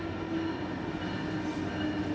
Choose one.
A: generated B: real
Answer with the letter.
B